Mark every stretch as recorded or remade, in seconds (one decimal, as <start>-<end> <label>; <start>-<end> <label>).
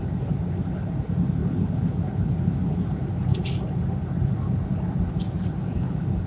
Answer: 0.0-6.3 recorded